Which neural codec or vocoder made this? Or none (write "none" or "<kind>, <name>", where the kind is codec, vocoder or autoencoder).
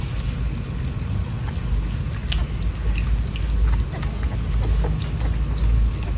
none